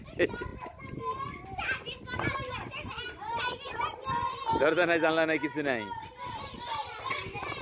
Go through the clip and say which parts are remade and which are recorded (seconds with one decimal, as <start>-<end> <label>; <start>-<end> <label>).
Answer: 0.0-7.6 recorded